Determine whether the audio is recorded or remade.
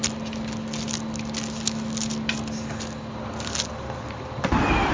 recorded